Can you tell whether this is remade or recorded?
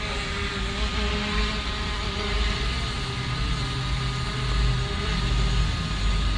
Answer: recorded